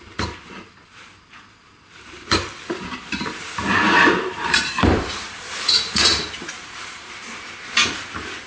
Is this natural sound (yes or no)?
no